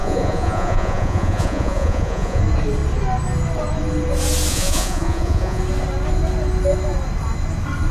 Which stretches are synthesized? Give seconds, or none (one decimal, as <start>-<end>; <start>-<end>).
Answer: 0.0-2.4; 4.5-5.6